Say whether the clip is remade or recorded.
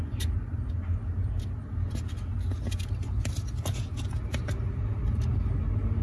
recorded